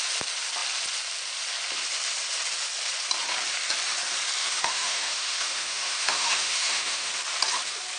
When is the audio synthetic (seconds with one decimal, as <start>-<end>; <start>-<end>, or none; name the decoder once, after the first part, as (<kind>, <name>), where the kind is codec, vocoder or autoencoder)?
4.4-7.1 (autoencoder, DAC-VAE)